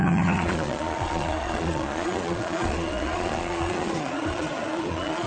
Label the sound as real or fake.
fake